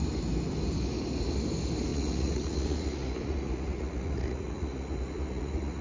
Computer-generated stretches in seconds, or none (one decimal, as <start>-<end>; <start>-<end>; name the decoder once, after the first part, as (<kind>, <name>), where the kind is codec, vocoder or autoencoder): 1.9-5.8 (vocoder, Vocos)